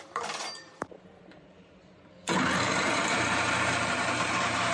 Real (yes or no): no